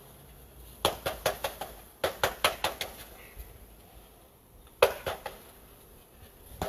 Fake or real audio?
real